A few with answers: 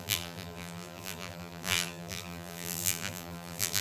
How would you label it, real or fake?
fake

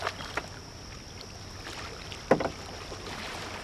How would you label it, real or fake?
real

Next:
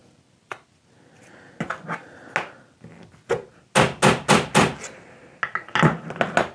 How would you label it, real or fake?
real